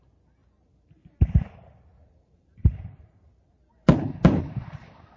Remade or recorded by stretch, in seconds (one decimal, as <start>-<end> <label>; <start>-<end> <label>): 0.0-0.4 recorded; 0.4-1.4 remade; 1.4-2.0 recorded; 2.0-5.2 remade